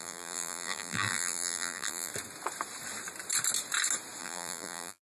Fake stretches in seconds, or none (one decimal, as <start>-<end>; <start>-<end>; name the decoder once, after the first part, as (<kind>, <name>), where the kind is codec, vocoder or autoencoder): 0.0-2.1 (vocoder, BigVGAN v2); 4.2-5.0